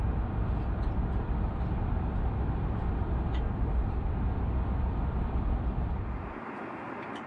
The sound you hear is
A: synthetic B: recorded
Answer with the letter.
B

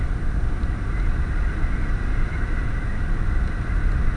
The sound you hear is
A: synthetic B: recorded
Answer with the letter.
B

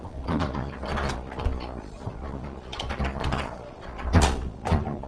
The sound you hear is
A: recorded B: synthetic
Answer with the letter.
B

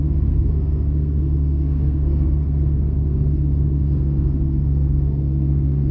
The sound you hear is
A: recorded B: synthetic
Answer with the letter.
B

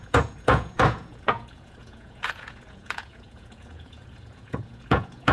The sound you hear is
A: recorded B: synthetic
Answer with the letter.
B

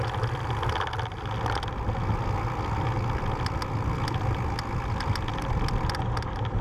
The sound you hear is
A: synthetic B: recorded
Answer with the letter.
B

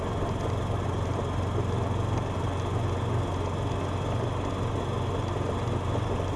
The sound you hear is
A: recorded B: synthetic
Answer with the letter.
A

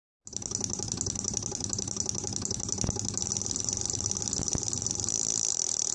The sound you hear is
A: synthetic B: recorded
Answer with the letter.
B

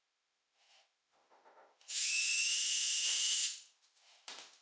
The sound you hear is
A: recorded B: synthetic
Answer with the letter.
B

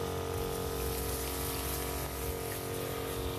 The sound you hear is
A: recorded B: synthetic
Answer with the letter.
A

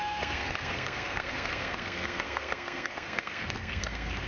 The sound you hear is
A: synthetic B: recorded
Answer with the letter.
A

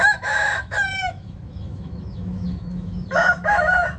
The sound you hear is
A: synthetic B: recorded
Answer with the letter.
A